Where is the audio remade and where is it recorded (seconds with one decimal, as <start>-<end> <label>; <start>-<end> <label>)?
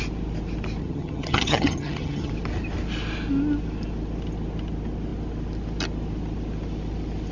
0.0-0.8 recorded; 0.8-2.3 remade; 2.3-7.3 recorded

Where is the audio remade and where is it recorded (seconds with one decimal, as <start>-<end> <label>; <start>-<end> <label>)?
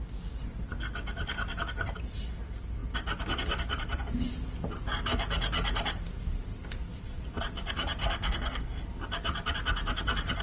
0.0-8.0 recorded; 8.0-8.9 remade; 8.9-10.4 recorded